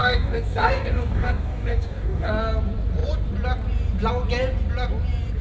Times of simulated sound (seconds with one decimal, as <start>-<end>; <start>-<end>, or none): 0.0-2.3